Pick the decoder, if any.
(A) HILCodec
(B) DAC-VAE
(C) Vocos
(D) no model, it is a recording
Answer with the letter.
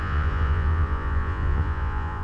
C